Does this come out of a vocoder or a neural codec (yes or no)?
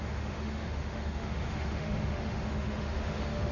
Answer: yes